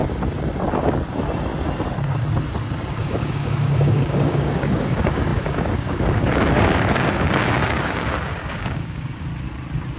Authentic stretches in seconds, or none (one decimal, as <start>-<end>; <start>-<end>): 0.0-2.9; 9.3-10.0